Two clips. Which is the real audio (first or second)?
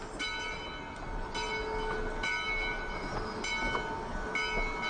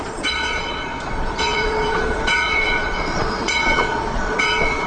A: first